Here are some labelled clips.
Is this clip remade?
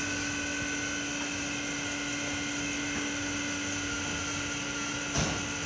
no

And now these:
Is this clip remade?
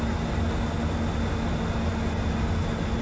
no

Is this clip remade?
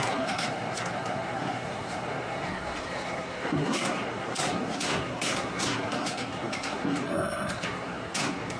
yes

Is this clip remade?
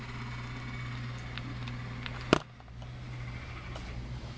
no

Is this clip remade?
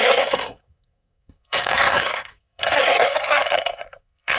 yes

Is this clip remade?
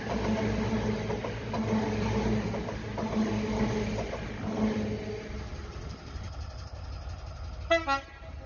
no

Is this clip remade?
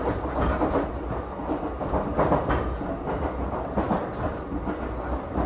no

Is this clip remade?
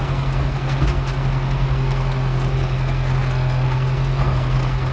yes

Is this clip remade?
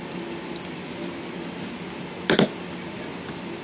no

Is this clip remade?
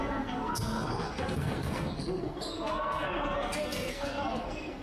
yes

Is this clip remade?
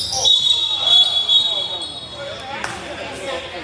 no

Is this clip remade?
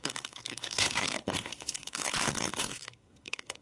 yes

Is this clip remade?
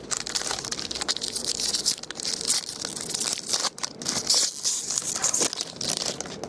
no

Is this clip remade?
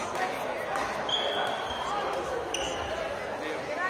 no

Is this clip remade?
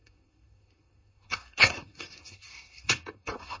yes